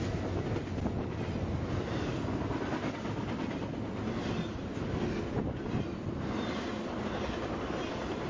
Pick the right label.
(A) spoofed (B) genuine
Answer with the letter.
B